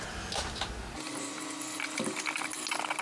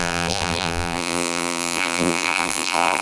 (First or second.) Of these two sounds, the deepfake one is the second